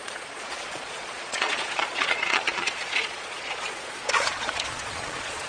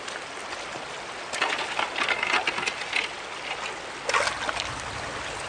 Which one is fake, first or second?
first